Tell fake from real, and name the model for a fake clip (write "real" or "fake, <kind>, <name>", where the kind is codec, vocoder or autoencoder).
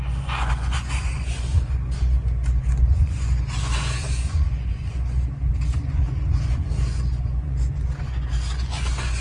fake, vocoder, Vocos